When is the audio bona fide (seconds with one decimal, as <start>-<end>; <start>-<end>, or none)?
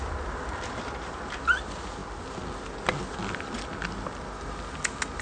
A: 0.0-5.2